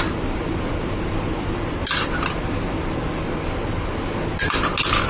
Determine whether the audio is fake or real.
real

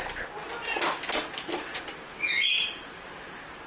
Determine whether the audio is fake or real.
real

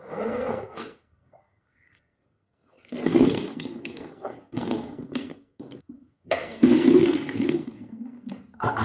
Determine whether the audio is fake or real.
fake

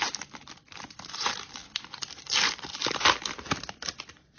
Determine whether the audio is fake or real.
real